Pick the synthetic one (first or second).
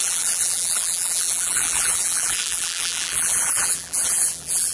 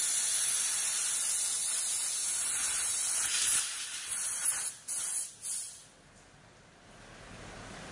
first